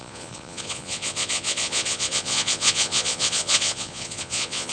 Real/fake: fake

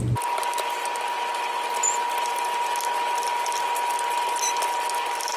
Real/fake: real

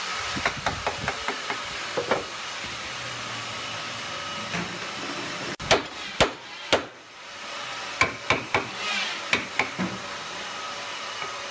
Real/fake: real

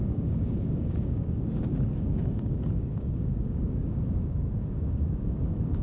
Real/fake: fake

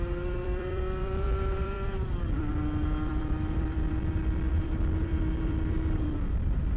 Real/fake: fake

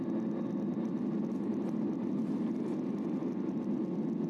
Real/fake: real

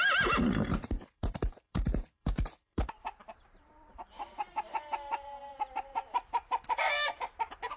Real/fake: fake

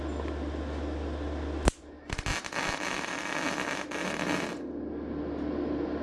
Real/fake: real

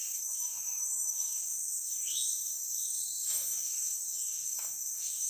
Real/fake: fake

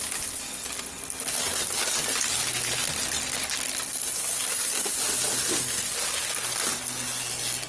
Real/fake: real